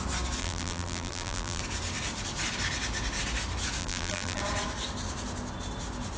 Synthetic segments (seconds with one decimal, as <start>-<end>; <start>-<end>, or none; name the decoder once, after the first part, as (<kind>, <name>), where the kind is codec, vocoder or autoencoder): 0.4-1.6 (vocoder, BigVGAN v2); 3.8-4.4